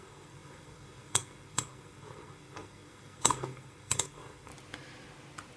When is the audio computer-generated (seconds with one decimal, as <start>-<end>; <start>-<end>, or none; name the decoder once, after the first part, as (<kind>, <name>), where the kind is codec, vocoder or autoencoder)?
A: 0.0-4.5 (codec, SNAC)